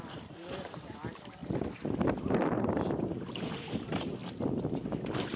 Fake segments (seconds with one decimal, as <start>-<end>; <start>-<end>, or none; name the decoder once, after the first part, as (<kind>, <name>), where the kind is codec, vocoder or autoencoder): 0.0-1.4 (vocoder, BigVGAN v2); 2.2-4.2